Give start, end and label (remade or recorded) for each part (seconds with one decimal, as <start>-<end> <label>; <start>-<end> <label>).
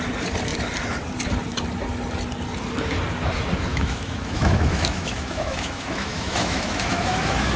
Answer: 0.0-3.7 recorded; 3.7-7.6 remade